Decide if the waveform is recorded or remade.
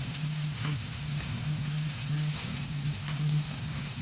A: remade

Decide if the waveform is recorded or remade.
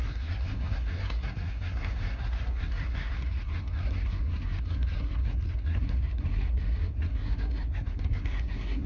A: remade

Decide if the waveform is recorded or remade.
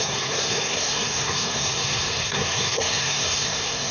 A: remade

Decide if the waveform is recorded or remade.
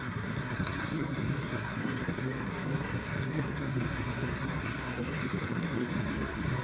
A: remade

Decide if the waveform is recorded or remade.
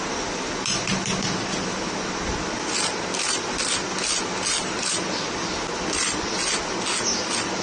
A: recorded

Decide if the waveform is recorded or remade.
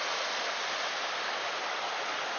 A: recorded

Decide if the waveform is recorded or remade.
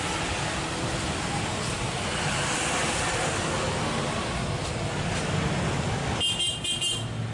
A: recorded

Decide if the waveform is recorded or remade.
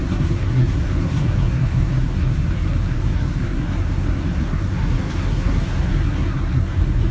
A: remade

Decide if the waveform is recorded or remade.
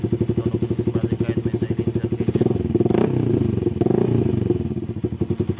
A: recorded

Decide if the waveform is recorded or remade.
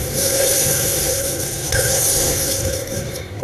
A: remade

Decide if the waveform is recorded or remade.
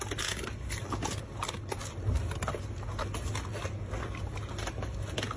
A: recorded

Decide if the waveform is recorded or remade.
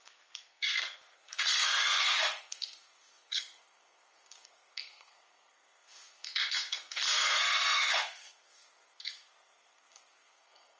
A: remade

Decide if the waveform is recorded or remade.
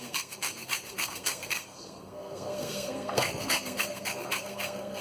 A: remade